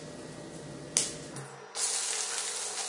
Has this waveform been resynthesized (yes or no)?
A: no